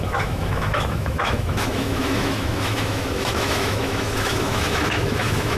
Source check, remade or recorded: remade